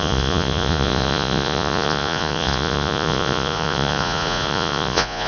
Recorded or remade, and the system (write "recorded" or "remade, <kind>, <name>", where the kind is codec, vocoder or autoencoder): remade, vocoder, Vocos